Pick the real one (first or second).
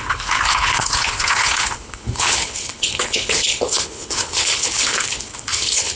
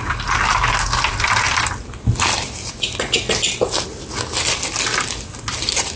second